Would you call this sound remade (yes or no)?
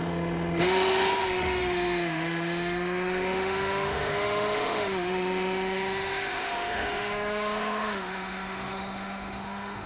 yes